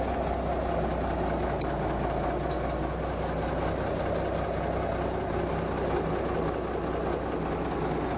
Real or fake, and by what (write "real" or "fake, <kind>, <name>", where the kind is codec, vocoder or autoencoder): real